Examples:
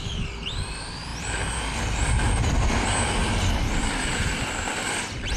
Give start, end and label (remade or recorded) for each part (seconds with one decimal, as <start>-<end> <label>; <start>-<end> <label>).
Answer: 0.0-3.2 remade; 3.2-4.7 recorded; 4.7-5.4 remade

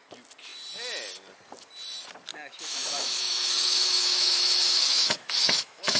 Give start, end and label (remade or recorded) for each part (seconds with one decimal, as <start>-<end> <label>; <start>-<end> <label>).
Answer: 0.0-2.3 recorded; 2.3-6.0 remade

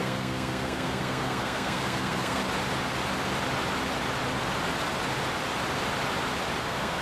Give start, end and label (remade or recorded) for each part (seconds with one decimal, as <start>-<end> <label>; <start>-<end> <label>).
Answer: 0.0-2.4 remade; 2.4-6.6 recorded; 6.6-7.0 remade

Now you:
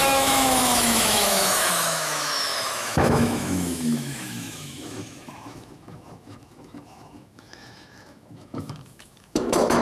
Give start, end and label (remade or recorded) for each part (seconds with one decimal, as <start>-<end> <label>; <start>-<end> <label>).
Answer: 0.0-9.8 remade